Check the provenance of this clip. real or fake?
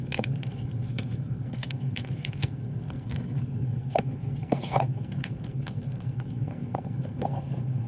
fake